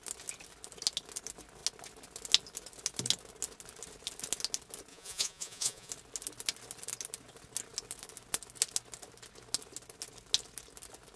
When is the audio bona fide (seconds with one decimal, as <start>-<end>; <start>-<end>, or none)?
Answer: 0.0-4.9; 5.9-11.2